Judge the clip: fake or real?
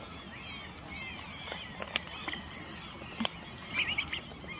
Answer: real